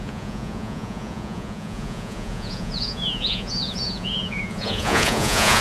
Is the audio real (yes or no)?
no